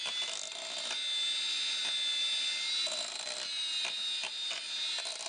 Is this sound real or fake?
real